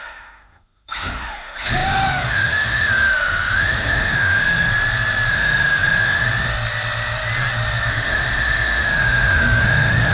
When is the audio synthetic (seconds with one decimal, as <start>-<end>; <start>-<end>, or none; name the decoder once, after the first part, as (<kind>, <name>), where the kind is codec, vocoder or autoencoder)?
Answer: 0.0-4.7 (autoencoder, DAC-VAE); 5.3-6.3; 7.9-10.1